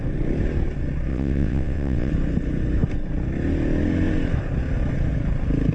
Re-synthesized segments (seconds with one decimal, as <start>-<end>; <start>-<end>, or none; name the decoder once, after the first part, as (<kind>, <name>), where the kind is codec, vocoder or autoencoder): 1.1-2.1 (vocoder, WaveNeXt)